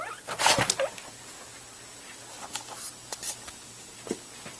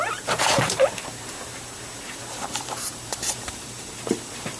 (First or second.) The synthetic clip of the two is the second